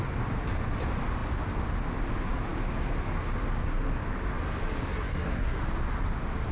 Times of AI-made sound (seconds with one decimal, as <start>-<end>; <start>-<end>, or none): 4.9-5.6